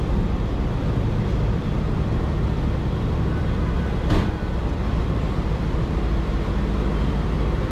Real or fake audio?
fake